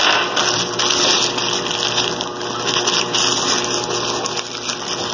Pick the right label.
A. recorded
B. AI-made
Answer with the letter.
A